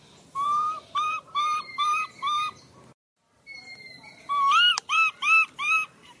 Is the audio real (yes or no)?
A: no